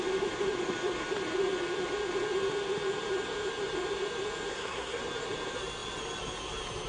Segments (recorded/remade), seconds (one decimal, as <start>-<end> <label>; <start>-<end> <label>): 0.0-4.5 recorded; 4.5-5.0 remade; 5.0-6.9 recorded

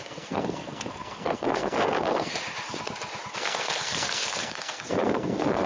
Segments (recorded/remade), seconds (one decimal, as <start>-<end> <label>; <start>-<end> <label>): 0.0-2.3 remade; 2.3-3.3 recorded; 3.3-5.7 remade

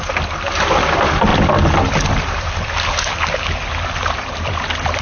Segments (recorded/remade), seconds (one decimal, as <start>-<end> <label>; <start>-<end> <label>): 0.0-5.0 recorded

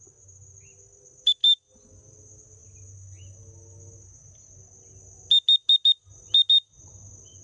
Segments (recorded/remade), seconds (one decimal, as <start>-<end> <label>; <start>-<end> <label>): 0.0-7.4 recorded

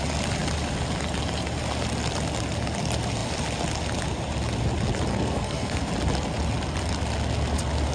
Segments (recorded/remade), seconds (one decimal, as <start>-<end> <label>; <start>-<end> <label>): 0.0-5.1 recorded; 5.1-5.9 remade; 5.9-7.9 recorded

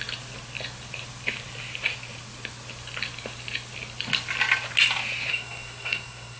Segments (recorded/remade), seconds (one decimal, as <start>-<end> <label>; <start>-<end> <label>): 0.0-5.3 recorded; 5.3-6.4 remade